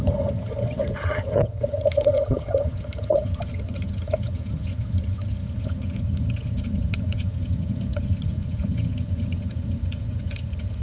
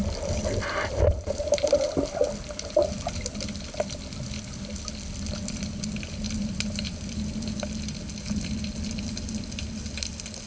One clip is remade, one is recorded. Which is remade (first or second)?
first